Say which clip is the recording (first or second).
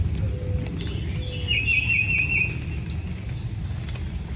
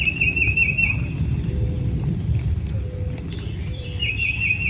first